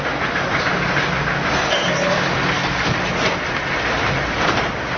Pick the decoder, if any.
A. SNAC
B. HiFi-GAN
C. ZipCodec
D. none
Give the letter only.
D